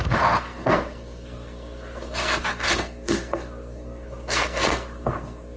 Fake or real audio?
fake